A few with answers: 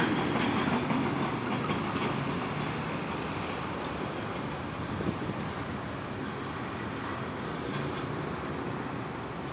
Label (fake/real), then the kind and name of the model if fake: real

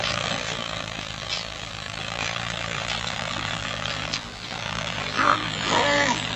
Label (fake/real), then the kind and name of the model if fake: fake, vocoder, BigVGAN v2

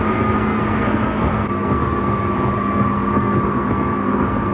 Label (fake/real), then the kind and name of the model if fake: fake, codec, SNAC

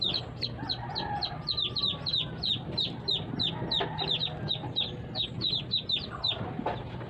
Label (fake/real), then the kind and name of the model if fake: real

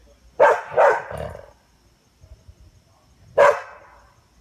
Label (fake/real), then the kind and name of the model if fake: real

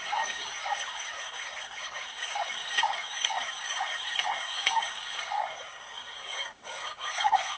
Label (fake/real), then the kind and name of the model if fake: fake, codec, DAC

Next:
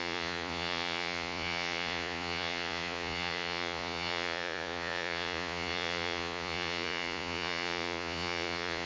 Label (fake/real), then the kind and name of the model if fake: fake, vocoder, Vocos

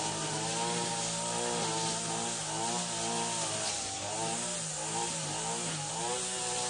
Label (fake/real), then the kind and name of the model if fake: real